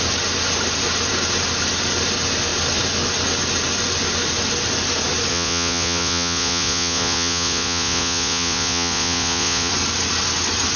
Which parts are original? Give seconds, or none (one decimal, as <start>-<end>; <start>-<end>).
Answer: 0.0-5.3; 9.7-10.8

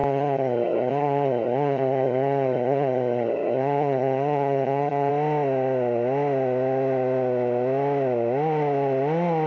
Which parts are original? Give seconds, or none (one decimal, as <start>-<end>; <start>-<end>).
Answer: 5.1-9.5

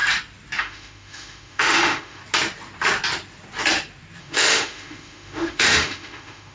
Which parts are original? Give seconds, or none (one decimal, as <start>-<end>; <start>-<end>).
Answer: 0.0-0.6; 2.2-4.2

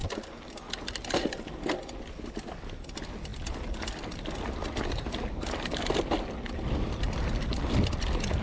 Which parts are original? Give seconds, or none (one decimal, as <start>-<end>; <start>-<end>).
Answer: 0.0-8.4

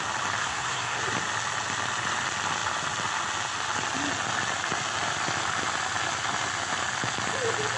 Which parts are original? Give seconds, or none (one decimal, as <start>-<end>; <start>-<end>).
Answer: 0.0-0.4; 1.0-7.8

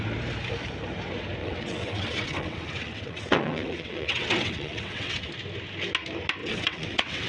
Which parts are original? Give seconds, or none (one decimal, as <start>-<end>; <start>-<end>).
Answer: 0.0-1.4; 5.3-6.4

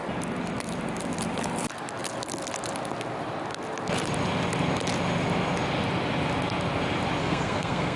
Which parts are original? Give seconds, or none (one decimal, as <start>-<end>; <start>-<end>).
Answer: 0.0-7.2